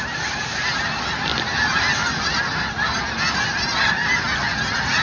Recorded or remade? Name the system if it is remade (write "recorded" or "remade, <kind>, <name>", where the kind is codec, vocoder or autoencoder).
recorded